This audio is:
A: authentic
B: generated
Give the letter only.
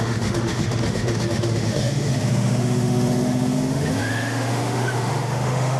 B